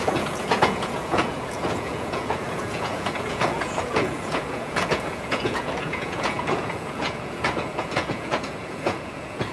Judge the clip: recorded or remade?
remade